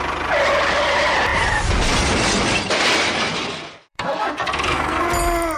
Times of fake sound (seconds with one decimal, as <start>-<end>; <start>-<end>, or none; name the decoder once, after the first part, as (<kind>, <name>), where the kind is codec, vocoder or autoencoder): 3.8-5.1 (codec, SNAC)